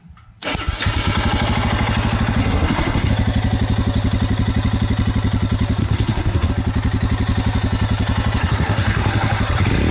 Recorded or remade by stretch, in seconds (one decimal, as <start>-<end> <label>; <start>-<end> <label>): 0.0-2.4 recorded; 2.4-3.1 remade; 3.1-5.8 recorded; 5.8-6.5 remade; 6.5-8.4 recorded; 8.4-9.4 remade; 9.4-9.9 recorded